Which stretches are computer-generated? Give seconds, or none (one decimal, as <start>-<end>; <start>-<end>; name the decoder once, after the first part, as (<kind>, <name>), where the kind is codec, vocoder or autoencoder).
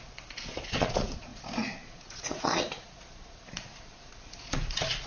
0.0-5.1 (vocoder, Vocos)